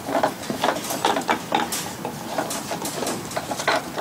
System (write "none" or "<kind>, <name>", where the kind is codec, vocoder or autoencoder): none